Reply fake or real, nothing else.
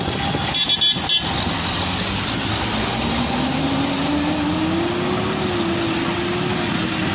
real